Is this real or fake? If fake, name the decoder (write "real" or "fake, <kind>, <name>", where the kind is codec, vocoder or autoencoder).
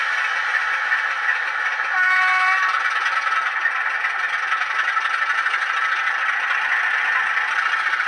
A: real